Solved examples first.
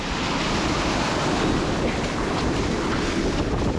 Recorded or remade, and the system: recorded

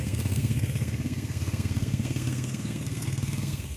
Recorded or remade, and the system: remade, codec, SNAC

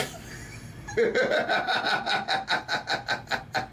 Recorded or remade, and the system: recorded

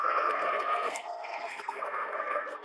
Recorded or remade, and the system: remade, codec, SNAC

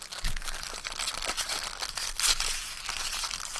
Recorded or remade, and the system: recorded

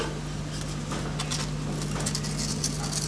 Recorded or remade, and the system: recorded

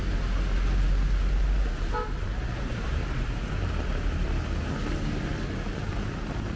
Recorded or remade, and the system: recorded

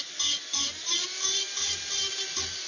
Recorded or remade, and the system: recorded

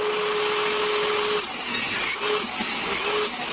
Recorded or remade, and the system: recorded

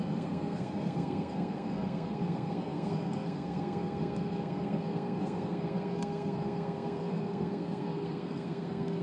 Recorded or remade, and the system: remade, codec, SNAC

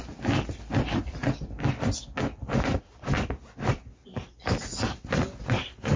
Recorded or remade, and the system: recorded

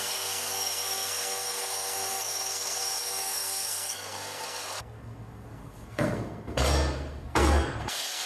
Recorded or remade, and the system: remade, codec, SNAC